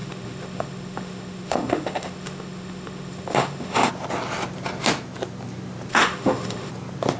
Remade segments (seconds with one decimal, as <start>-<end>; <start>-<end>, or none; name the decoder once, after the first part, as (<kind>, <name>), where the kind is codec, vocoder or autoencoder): 0.0-3.9 (autoencoder, DAC-VAE); 5.9-6.7